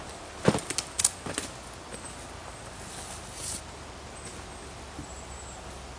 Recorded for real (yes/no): yes